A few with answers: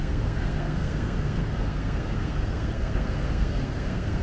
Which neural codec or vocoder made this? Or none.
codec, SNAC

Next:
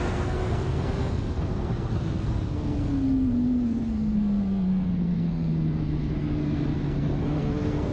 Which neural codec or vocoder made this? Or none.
codec, SNAC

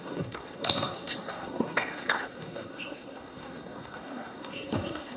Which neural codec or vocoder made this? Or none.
codec, SNAC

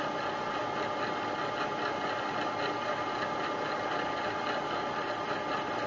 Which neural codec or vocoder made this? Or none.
none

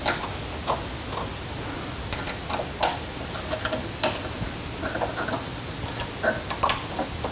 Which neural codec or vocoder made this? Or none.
none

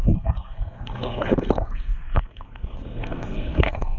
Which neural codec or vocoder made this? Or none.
codec, SNAC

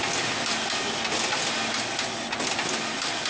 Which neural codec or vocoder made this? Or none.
none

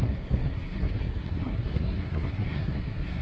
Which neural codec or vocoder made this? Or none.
codec, SNAC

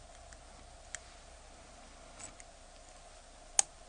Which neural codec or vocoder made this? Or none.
none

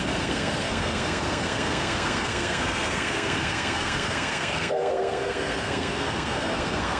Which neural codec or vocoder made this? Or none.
codec, SNAC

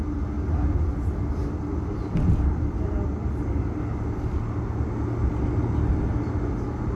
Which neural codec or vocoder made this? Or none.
none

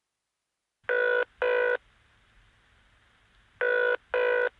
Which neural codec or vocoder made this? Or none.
none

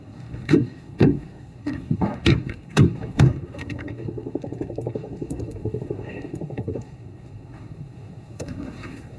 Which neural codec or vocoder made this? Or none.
codec, SNAC